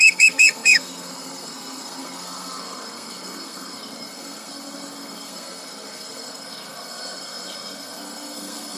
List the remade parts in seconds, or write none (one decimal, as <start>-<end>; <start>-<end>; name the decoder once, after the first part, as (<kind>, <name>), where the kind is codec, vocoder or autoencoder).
0.0-8.8 (codec, SNAC)